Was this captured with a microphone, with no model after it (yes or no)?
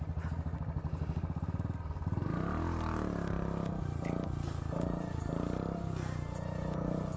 yes